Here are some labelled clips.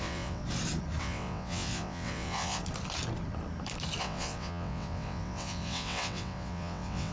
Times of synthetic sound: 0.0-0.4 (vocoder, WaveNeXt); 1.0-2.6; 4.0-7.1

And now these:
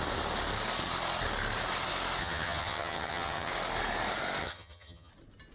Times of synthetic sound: 2.2-3.5 (vocoder, HiFi-GAN); 4.4-5.1

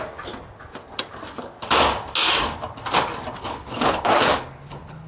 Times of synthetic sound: 3.4-5.1 (codec, HILCodec)